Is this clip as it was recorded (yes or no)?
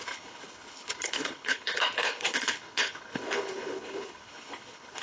no